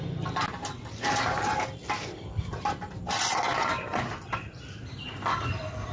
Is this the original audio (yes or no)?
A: yes